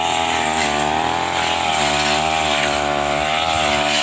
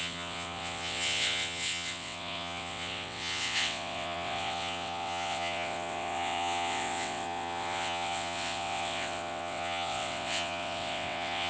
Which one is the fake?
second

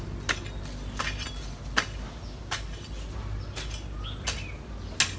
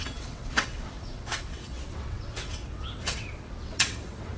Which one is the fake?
second